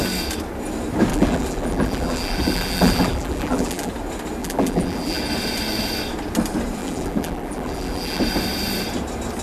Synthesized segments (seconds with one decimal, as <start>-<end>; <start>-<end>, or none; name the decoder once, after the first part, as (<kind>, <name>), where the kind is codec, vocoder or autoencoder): 1.1-3.9 (vocoder, BigVGAN v2); 4.4-5.2; 6.8-8.2